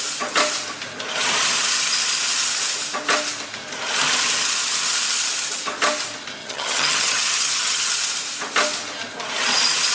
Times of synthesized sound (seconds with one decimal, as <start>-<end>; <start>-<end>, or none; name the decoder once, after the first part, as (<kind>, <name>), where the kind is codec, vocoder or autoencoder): 6.4-7.9 (vocoder, HiFi-GAN)